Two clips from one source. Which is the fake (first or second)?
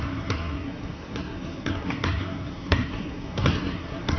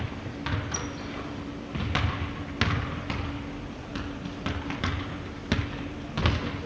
first